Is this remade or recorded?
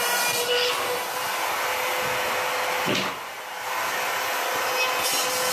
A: recorded